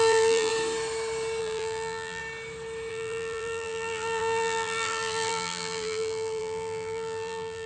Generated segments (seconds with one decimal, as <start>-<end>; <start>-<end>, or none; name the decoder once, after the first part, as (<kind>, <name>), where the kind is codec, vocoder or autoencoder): 0.0-0.5 (vocoder, BigVGAN v2); 1.4-2.2; 2.9-7.7